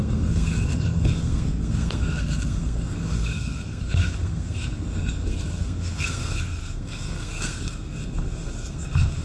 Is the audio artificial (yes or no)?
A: yes